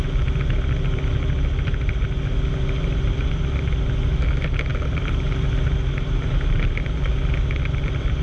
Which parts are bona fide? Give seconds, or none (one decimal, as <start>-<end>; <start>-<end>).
0.0-8.2